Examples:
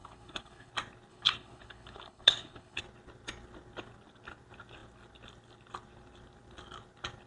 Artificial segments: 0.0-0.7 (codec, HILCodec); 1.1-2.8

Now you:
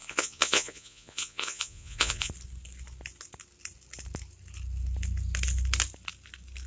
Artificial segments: 0.0-2.3 (vocoder, Vocos)

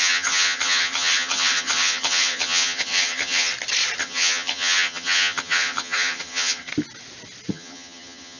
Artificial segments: 0.0-3.5 (vocoder, HiFi-GAN); 4.0-6.7; 7.5-8.4

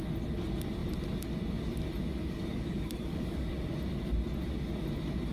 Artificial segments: 2.1-3.5 (codec, DAC)